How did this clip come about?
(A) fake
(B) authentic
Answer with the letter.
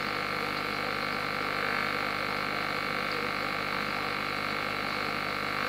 A